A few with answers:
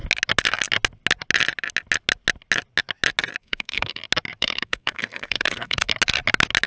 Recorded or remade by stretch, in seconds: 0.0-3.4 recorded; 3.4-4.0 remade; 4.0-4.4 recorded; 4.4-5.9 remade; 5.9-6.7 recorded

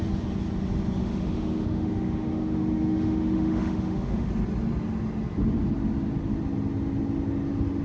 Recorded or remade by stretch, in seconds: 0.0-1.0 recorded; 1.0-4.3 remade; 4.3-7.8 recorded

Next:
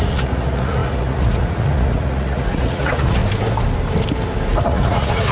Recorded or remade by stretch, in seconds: 0.0-3.2 remade; 3.2-4.6 recorded; 4.6-5.3 remade